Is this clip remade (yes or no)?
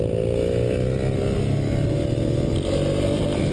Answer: no